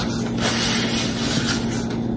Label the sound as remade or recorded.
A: recorded